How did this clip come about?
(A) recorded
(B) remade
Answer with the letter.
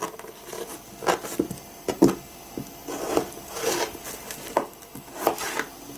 A